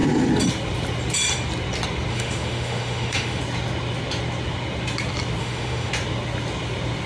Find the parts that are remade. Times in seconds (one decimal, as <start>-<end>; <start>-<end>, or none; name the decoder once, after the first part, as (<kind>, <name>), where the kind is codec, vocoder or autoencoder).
2.1-3.4 (autoencoder, DAC-VAE); 5.4-5.9